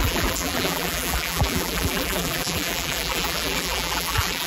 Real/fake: fake